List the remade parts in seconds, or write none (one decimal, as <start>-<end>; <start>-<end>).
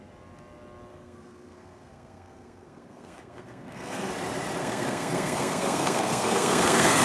0.9-4.1; 4.6-7.0